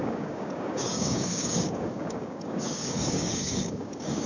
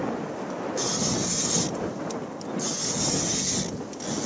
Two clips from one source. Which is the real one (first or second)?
second